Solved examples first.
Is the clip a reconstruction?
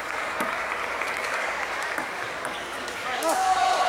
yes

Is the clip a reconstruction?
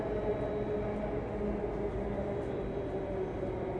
no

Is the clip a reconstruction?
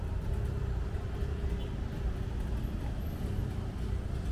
no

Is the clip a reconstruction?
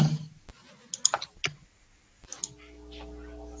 no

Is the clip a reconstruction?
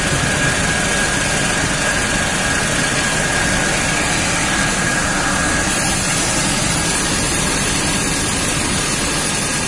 no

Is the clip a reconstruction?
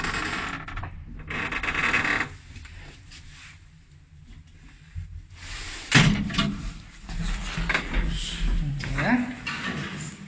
no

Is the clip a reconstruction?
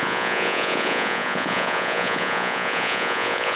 yes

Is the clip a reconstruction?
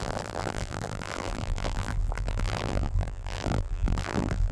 yes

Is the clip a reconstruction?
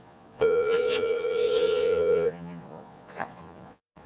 yes